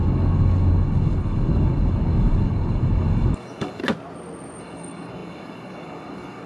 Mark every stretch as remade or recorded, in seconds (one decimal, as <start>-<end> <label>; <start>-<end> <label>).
0.0-3.8 remade; 3.8-4.6 recorded; 4.6-6.5 remade